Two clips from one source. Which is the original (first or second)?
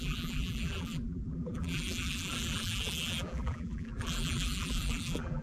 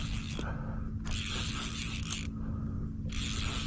second